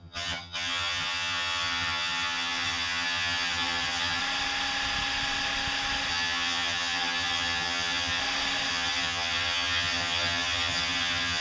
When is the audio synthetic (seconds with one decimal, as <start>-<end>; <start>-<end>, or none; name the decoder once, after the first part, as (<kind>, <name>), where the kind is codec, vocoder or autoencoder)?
0.0-4.2 (vocoder, HiFi-GAN); 6.1-8.2; 8.7-11.4